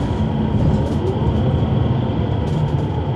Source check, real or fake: real